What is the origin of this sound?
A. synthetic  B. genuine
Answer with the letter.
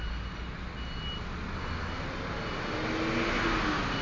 B